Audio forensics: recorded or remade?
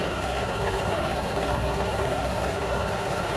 remade